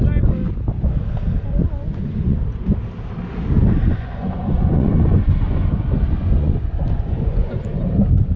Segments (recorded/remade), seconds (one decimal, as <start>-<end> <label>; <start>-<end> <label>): 0.0-1.8 recorded; 1.8-2.4 remade; 2.4-3.9 recorded; 3.9-5.7 remade; 5.7-6.2 recorded; 6.2-7.8 remade; 7.8-8.4 recorded